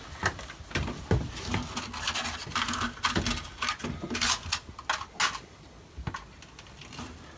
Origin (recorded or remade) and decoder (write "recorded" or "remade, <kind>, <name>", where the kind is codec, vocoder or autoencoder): recorded